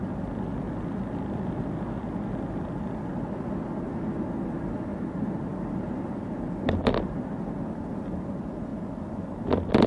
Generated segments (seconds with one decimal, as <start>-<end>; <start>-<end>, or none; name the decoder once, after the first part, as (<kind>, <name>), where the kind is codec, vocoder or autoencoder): none